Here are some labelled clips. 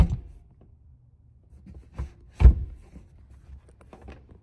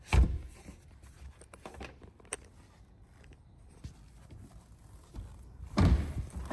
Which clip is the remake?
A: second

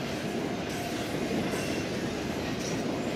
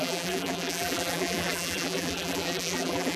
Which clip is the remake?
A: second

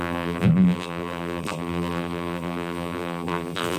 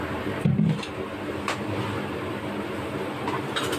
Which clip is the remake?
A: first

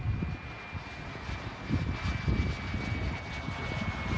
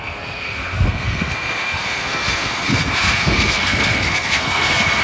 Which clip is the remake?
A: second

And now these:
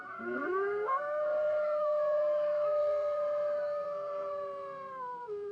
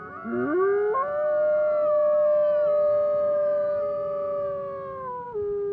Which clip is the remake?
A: first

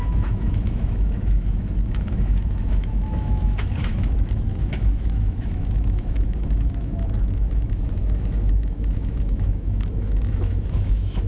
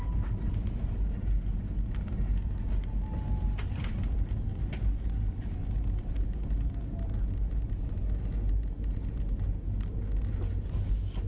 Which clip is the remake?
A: first